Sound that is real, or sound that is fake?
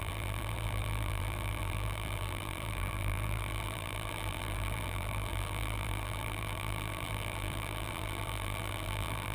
fake